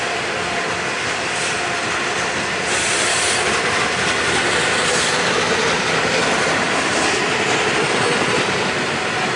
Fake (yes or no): no